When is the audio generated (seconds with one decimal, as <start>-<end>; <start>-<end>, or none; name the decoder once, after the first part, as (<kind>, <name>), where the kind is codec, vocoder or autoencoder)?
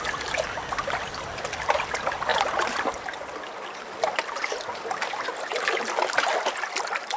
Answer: none